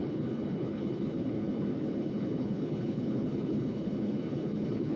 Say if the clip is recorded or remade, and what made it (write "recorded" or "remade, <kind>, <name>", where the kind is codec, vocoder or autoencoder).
remade, codec, HILCodec